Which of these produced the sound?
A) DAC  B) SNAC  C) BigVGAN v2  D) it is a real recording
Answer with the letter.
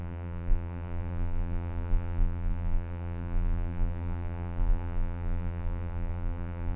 C